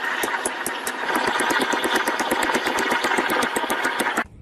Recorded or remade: recorded